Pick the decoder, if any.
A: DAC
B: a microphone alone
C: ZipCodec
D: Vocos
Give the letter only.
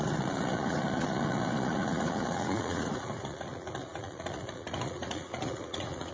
D